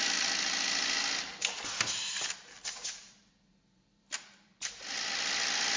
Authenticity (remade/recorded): recorded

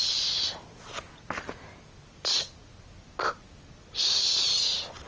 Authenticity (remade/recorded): recorded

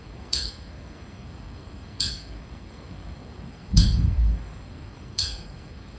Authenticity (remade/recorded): remade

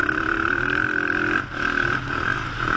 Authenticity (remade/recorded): recorded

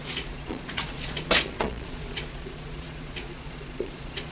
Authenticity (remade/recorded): remade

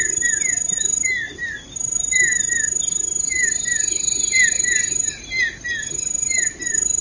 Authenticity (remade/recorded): recorded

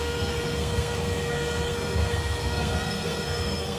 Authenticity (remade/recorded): remade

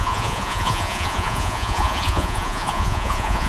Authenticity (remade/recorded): remade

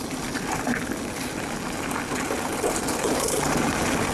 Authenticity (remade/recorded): recorded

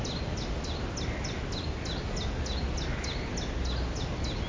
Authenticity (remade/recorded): recorded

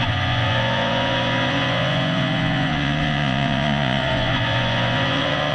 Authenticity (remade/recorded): remade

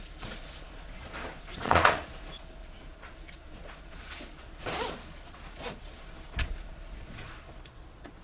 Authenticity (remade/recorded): remade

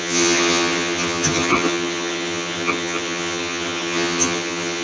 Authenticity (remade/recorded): remade